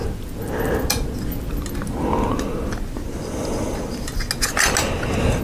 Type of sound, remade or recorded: recorded